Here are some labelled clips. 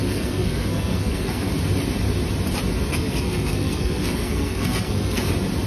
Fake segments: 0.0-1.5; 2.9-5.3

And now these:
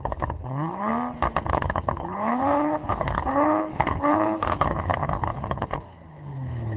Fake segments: 0.0-0.9; 1.5-6.8

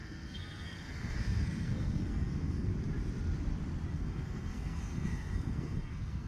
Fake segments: 0.0-2.7; 3.9-6.3

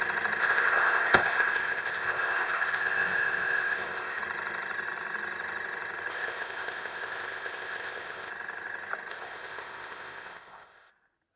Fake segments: 0.4-4.2; 6.1-8.3; 9.1-10.9

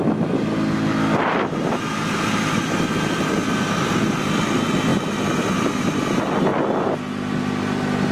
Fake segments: none

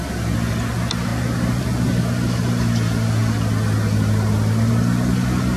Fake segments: none